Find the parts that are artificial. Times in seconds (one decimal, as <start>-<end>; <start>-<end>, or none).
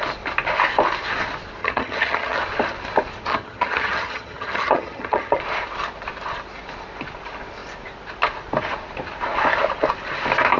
1.6-2.4; 3.3-5.4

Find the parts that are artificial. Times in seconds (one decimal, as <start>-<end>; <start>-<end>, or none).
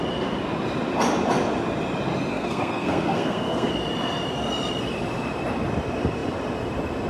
2.3-3.7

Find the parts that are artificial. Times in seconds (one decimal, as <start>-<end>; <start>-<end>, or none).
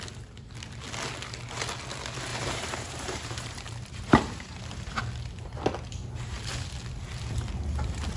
2.3-5.0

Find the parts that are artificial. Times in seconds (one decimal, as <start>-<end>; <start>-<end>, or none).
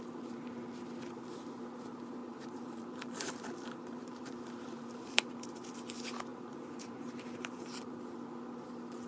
2.2-5.3; 6.3-7.9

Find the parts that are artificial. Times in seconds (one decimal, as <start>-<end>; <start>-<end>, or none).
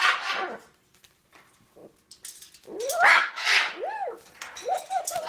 none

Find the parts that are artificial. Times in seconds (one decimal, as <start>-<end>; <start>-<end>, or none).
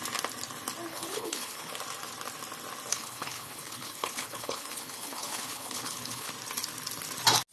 0.9-1.7; 2.9-6.3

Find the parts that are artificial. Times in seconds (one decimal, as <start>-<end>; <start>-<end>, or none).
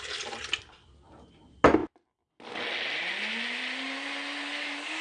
none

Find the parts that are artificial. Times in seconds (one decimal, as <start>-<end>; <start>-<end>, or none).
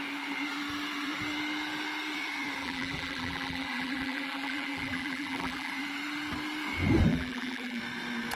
2.6-5.7; 7.1-7.8